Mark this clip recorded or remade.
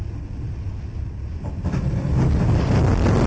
recorded